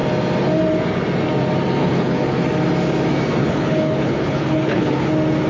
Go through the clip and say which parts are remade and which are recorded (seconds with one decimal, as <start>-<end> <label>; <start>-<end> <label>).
0.0-1.8 recorded; 1.8-2.4 remade; 2.4-3.4 recorded; 3.4-5.1 remade; 5.1-5.5 recorded